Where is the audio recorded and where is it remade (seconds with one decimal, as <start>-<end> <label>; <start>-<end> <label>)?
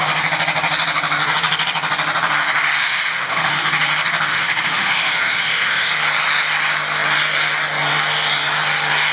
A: 0.0-2.8 recorded; 2.8-3.5 remade; 3.5-4.3 recorded; 4.3-5.9 remade; 5.9-9.1 recorded